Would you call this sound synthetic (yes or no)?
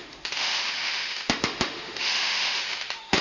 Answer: yes